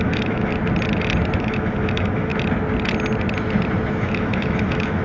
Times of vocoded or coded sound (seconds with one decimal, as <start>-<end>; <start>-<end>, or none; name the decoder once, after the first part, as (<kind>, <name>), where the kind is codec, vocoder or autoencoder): 0.0-0.5 (autoencoder, DAC-VAE); 1.4-2.3; 3.9-5.0